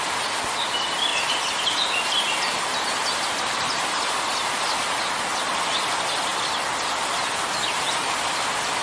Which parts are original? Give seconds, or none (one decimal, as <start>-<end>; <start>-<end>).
0.0-8.8